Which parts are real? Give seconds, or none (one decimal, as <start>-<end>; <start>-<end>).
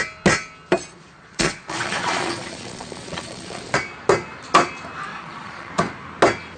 0.0-0.9; 3.6-5.1; 5.7-6.6